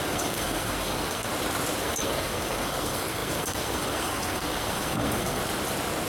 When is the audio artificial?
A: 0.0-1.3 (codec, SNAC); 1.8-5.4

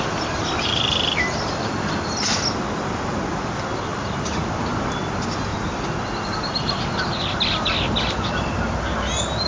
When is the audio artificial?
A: none

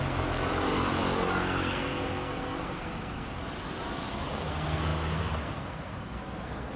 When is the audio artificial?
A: 0.0-0.4 (codec, SNAC); 1.4-3.4; 4.3-6.8